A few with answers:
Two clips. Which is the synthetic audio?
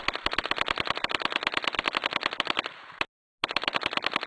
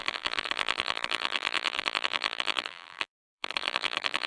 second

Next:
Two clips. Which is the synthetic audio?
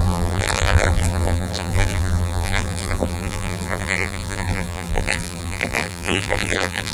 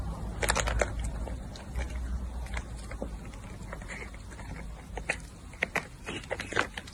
first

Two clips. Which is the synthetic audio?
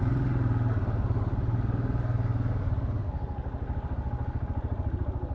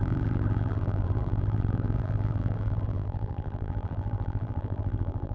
second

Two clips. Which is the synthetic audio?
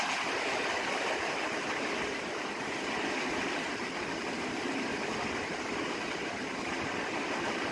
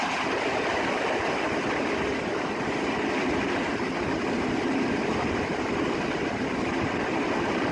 first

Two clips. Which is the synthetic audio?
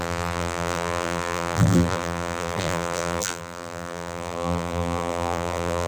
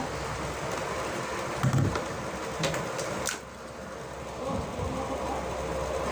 first